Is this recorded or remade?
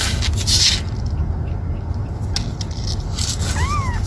recorded